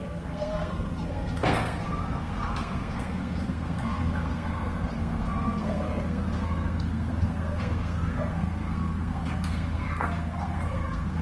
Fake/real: fake